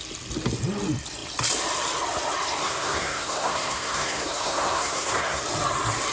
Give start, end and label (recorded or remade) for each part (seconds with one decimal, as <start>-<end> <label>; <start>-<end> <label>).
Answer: 0.0-2.6 recorded; 2.6-5.4 remade; 5.4-6.1 recorded